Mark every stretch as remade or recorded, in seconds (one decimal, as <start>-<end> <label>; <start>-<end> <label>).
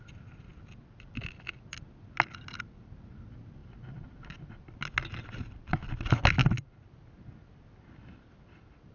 0.0-0.5 recorded; 0.5-1.3 remade; 1.3-5.1 recorded; 5.1-5.7 remade; 5.7-8.9 recorded